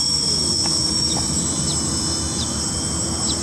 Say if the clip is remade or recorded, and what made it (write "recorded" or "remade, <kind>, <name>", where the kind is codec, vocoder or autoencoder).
remade, vocoder, BigVGAN v2